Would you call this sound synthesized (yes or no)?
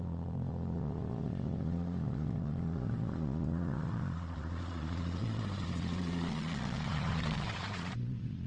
yes